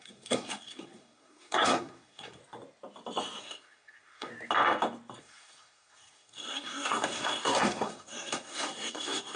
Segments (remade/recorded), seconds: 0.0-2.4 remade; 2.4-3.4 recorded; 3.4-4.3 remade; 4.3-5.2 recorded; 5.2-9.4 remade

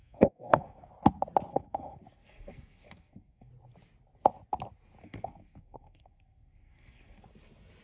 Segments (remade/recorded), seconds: 0.0-0.9 remade; 0.9-1.5 recorded; 1.5-3.5 remade; 3.5-5.0 recorded; 5.0-7.2 remade; 7.2-7.8 recorded

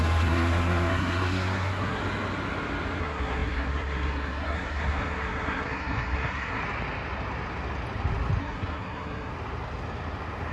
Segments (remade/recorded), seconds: 0.0-2.0 remade; 2.0-3.0 recorded; 3.0-6.6 remade; 6.6-8.4 recorded; 8.4-9.3 remade; 9.3-10.5 recorded

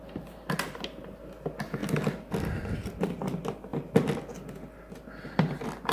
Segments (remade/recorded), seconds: 0.0-5.9 recorded

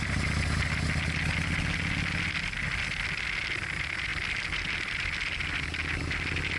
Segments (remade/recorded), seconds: 0.0-6.6 recorded